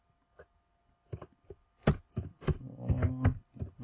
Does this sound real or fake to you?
real